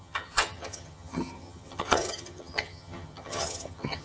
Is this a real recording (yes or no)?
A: no